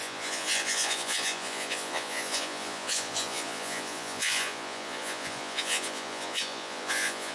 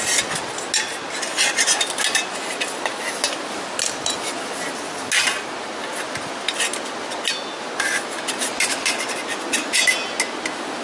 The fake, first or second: first